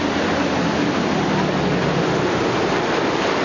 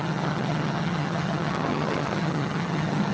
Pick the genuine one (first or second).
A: first